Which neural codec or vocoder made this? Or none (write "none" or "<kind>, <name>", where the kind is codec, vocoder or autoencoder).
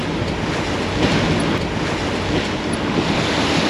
none